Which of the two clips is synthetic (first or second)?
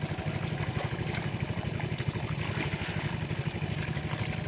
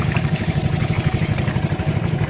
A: second